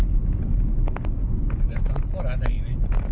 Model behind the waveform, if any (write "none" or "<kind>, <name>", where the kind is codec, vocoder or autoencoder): none